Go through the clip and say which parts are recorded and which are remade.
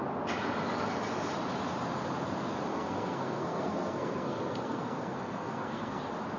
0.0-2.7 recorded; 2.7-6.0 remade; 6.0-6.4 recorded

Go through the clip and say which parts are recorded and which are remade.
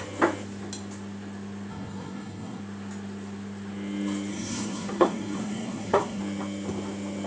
0.0-1.7 recorded; 1.7-2.6 remade; 2.6-4.3 recorded; 4.3-6.2 remade; 6.2-7.3 recorded